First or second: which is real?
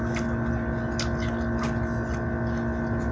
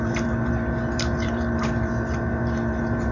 first